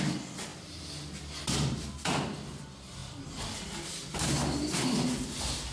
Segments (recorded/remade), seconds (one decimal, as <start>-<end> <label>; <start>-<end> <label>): 0.0-5.7 recorded